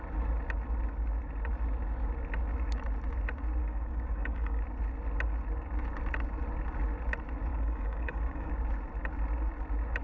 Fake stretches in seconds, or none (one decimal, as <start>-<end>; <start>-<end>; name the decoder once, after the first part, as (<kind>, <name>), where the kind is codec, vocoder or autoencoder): 3.6-4.6 (codec, DAC); 7.5-8.5